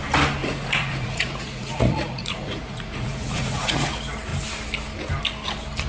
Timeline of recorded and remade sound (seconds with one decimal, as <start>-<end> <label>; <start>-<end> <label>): 0.0-0.4 recorded; 0.4-3.9 remade; 3.9-5.9 recorded